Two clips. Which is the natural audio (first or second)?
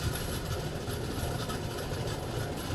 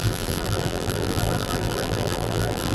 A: first